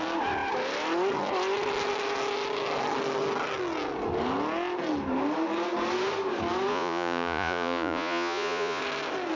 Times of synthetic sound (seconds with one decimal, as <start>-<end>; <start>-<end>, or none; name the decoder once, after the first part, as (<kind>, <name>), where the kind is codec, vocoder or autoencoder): 6.7-8.8 (vocoder, Vocos)